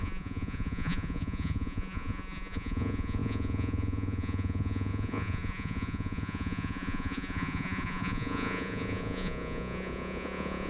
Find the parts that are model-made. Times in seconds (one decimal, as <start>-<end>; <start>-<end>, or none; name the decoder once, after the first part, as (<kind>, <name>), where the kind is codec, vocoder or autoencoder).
0.0-10.7 (vocoder, Vocos)

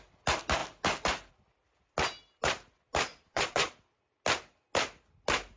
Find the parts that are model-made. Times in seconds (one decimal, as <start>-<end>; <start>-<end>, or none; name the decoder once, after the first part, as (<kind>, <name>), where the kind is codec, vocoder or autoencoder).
3.1-3.7 (vocoder, Vocos)

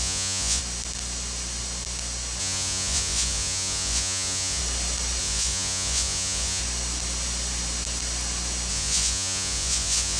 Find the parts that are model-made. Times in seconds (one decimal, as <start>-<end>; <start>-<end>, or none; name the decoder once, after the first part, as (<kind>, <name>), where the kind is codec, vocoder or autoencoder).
0.0-0.6 (vocoder, Vocos); 2.4-4.6; 5.2-6.6; 8.7-10.2

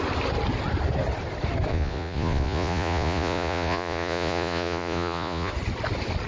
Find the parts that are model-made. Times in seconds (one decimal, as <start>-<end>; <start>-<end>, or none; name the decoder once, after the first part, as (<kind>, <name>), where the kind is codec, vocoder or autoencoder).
1.7-5.5 (vocoder, Vocos)

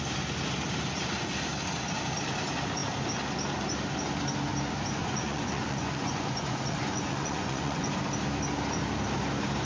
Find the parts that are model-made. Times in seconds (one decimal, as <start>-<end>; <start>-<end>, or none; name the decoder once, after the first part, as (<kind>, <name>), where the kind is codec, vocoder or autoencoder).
5.0-7.9 (vocoder, Vocos)

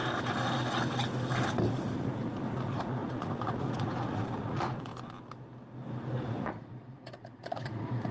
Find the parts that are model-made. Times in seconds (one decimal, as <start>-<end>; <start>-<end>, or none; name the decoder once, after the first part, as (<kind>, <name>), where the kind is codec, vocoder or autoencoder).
1.7-4.9 (vocoder, Vocos); 6.3-8.1

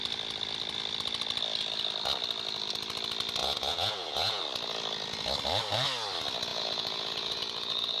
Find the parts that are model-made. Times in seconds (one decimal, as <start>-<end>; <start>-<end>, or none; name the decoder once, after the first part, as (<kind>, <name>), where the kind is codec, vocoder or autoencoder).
3.4-4.4 (vocoder, Vocos); 6.5-8.0